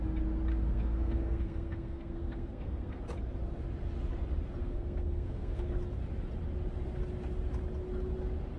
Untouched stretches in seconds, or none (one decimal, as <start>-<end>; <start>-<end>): 0.0-0.5; 3.0-4.6; 5.7-8.6